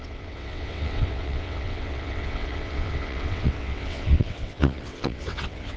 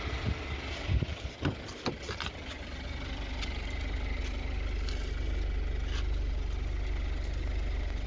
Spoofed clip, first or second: first